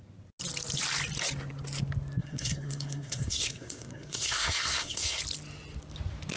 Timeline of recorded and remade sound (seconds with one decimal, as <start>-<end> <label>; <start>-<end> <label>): 0.0-2.2 recorded; 2.2-5.2 remade; 5.2-6.4 recorded